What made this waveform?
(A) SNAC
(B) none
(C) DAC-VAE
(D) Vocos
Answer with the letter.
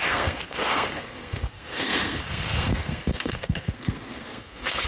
A